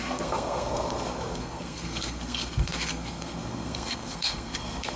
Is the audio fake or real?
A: fake